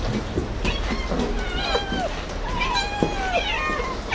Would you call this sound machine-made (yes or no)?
no